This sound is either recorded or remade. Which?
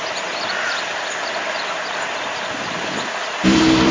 remade